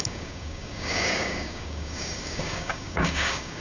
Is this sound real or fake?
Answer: fake